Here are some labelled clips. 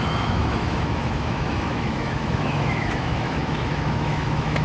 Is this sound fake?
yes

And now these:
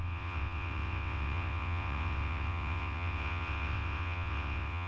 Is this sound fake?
yes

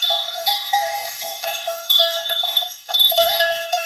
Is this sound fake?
yes